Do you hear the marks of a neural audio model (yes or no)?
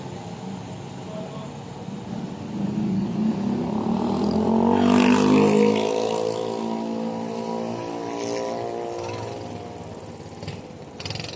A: no